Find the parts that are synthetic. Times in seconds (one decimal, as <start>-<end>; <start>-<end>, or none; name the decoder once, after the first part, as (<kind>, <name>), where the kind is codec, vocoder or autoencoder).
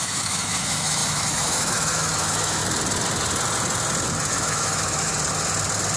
0.0-2.6 (autoencoder, DAC-VAE); 4.3-5.1